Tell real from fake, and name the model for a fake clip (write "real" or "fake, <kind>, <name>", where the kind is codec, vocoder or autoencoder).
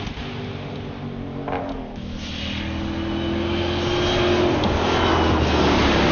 real